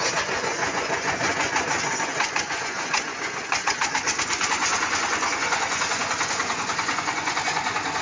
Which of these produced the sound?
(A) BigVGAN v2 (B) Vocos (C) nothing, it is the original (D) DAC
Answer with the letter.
B